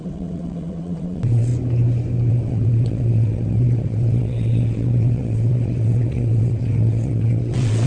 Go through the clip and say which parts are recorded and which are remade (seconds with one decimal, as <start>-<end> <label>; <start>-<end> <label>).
0.0-1.5 remade; 1.5-2.3 recorded; 2.3-7.9 remade